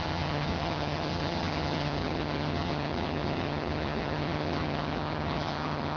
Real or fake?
fake